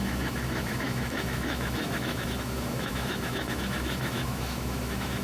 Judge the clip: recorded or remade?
remade